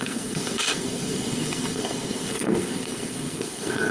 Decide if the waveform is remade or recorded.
remade